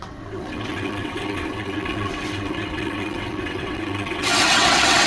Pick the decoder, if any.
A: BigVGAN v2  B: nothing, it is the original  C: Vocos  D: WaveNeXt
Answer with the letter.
D